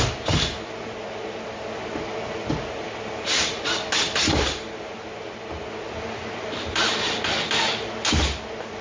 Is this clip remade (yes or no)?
no